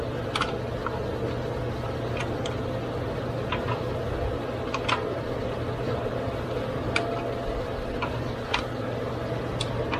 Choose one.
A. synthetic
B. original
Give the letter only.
B